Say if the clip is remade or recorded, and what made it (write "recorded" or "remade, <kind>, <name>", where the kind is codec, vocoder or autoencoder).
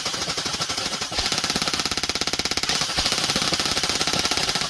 recorded